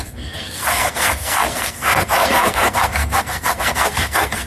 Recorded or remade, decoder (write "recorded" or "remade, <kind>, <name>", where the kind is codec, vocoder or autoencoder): remade, codec, SNAC